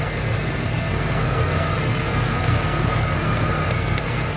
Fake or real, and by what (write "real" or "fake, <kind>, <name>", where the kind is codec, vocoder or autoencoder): fake, codec, SNAC